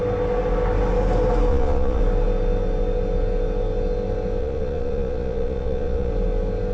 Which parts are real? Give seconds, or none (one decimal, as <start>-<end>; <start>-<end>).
0.0-1.5; 2.0-4.4; 6.1-6.7